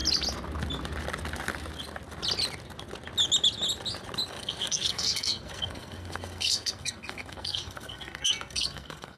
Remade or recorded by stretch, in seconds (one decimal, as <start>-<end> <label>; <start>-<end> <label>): 0.0-4.3 recorded; 4.3-9.2 remade